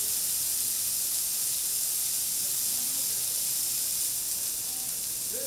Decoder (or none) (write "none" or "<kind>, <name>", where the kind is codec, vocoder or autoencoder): none